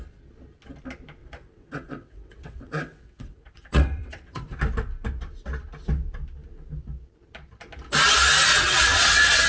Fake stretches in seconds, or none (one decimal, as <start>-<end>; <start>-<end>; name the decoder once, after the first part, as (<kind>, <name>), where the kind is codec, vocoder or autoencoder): 1.2-4.6 (vocoder, WaveNeXt); 8.5-9.5